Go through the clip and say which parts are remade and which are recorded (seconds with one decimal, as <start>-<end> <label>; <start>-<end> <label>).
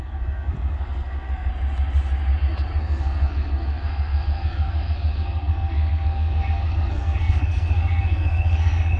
0.0-1.5 remade; 1.5-2.8 recorded; 2.8-9.0 remade